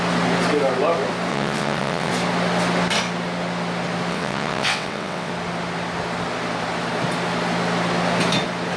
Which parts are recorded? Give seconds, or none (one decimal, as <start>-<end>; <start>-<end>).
0.0-1.3; 2.1-4.1; 5.3-8.8